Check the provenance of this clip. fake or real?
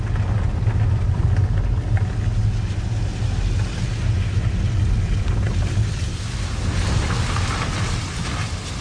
real